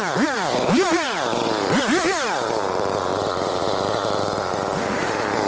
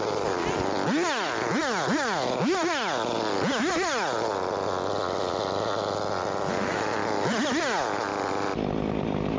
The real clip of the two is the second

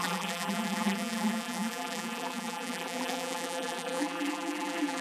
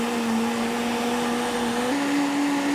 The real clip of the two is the second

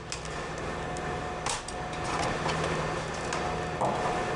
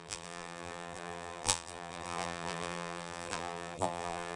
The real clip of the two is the first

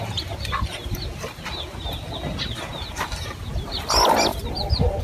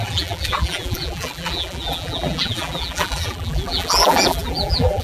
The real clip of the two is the first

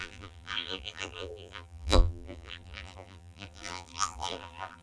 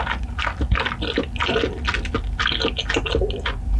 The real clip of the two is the second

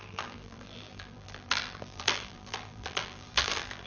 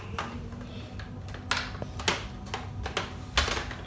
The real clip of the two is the second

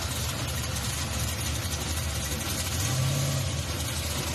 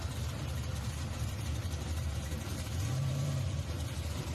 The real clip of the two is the first